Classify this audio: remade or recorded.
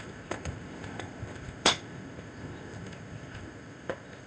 remade